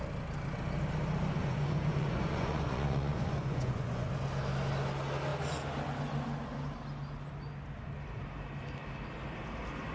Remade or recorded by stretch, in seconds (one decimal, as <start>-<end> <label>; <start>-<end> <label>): 0.0-1.4 recorded; 1.4-4.1 remade; 4.1-9.9 recorded